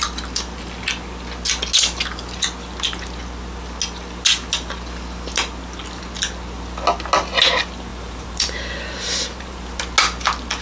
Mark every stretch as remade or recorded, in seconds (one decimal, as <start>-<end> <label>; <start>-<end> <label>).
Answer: 0.0-7.9 recorded; 7.9-9.8 remade; 9.8-10.6 recorded